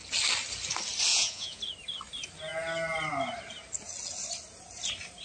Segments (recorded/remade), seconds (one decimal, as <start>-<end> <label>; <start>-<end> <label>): 0.0-1.1 recorded; 1.1-1.6 remade; 1.6-5.2 recorded

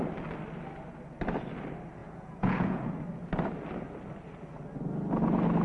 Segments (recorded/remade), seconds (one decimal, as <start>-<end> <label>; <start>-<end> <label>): 0.0-2.0 recorded; 2.0-3.0 remade; 3.0-5.6 recorded

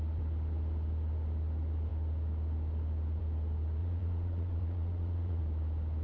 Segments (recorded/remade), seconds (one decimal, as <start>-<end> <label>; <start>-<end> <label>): 0.0-3.8 recorded; 3.8-5.4 remade; 5.4-6.0 recorded

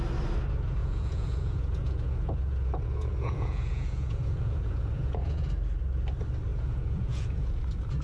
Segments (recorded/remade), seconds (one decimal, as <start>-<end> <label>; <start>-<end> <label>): 0.0-0.8 recorded; 0.8-5.5 remade; 5.5-6.5 recorded; 6.5-7.6 remade; 7.6-8.0 recorded

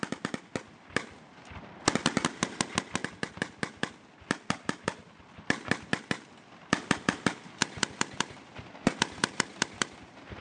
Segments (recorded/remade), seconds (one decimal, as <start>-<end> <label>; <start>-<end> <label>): 0.0-10.4 recorded

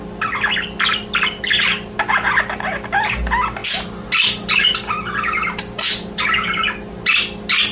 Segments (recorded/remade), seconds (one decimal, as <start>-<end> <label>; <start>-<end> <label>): 0.0-7.7 recorded